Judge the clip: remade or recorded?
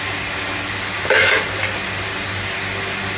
recorded